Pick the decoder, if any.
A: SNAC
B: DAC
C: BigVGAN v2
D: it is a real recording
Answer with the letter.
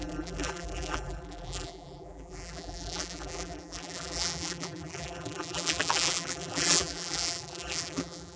C